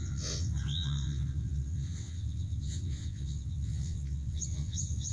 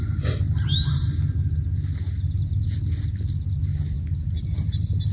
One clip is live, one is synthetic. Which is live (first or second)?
second